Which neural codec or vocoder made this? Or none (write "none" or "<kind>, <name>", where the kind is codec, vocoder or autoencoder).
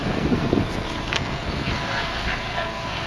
codec, SNAC